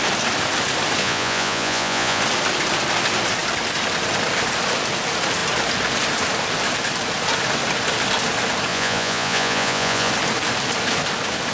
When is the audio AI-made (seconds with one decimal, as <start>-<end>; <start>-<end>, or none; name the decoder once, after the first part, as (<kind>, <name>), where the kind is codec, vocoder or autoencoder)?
1.0-2.2 (vocoder, Vocos); 8.7-10.1

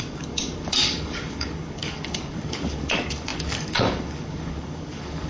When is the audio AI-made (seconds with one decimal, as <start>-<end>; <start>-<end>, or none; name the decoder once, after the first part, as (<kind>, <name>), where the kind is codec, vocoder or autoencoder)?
0.0-5.3 (codec, DAC)

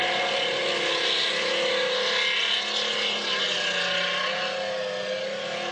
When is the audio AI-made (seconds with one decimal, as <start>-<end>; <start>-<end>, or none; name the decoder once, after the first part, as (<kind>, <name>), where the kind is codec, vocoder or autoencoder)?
none

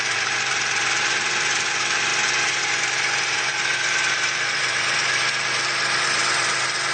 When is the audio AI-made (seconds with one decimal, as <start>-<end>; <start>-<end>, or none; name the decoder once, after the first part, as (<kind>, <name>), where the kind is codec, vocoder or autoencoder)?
0.0-2.1 (vocoder, BigVGAN v2); 3.5-6.9

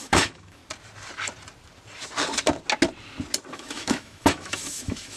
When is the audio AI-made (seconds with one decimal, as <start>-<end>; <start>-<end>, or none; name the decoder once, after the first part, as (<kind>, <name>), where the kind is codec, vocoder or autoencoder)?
0.0-0.6 (autoencoder, DAC-VAE); 3.5-5.2

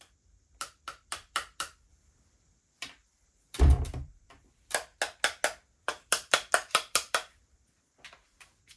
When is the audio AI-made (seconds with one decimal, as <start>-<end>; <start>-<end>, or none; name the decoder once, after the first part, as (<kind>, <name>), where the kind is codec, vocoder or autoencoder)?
0.0-4.9 (vocoder, BigVGAN v2); 5.8-8.8